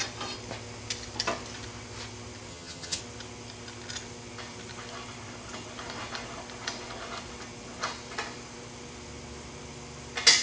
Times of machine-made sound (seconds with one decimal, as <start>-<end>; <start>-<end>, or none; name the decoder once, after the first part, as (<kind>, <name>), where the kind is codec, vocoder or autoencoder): 2.5-3.0 (vocoder, HiFi-GAN)